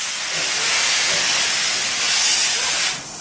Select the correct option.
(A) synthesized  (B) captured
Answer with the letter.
B